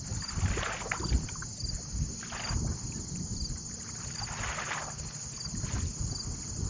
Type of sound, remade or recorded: recorded